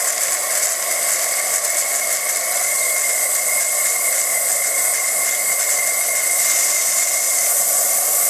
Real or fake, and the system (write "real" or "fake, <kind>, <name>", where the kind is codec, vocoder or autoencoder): real